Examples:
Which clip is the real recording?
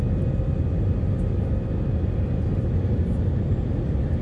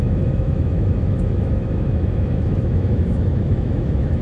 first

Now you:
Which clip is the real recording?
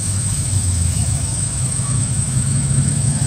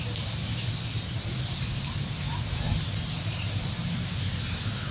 second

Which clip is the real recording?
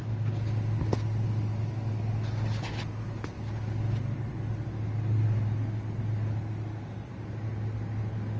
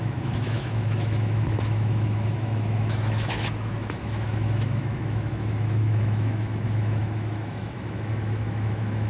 first